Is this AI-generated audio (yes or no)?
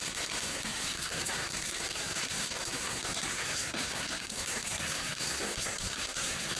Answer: yes